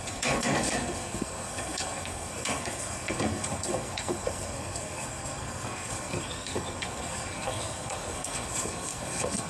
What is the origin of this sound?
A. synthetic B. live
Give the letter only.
A